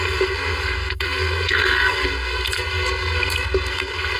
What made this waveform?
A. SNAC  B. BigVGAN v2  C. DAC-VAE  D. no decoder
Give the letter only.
A